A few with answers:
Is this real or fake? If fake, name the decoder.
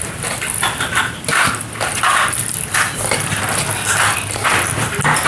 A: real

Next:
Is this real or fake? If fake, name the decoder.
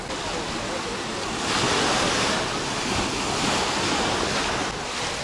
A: real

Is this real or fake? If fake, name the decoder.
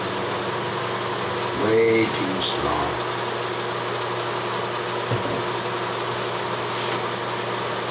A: real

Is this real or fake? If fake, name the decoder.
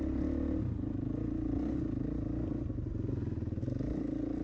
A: real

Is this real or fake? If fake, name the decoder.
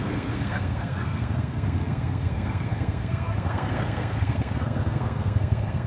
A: fake, codec, SNAC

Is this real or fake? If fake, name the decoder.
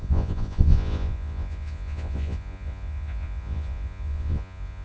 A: fake, vocoder, Vocos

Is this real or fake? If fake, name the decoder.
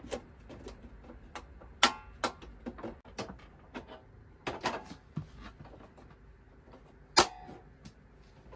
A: real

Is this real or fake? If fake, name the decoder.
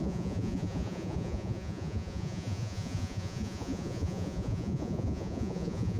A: fake, vocoder, Vocos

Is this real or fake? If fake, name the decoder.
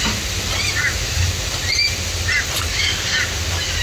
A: real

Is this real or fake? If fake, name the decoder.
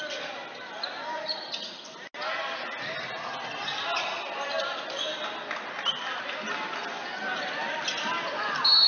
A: real